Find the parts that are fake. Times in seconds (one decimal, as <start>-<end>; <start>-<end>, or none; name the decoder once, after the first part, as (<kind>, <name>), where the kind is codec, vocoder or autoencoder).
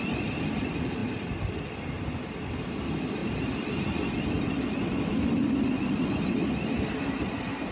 none